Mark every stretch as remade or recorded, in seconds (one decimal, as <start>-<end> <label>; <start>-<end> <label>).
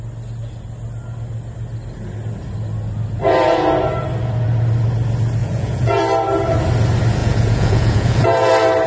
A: 0.0-5.4 recorded; 5.4-6.0 remade; 6.0-7.2 recorded; 7.2-8.5 remade; 8.5-8.9 recorded